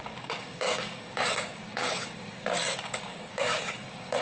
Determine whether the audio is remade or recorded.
remade